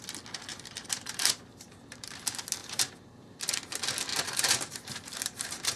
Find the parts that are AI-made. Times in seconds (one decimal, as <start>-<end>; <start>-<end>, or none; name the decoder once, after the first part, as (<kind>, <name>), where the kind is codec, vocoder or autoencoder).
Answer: 0.5-2.1 (vocoder, BigVGAN v2); 2.6-3.5; 4.1-5.8